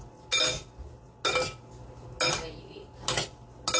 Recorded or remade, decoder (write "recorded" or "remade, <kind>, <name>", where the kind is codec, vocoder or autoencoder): recorded